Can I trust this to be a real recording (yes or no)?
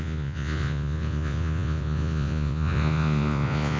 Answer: no